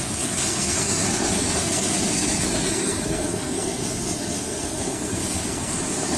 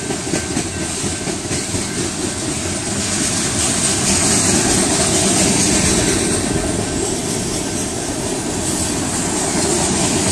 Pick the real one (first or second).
second